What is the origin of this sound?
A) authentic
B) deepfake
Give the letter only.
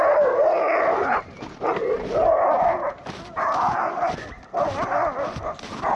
A